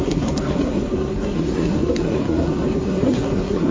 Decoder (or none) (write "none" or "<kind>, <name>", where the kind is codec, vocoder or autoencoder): codec, SNAC